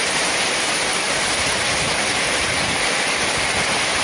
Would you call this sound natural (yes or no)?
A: yes